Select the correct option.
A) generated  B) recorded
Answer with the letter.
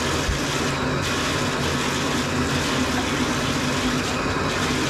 B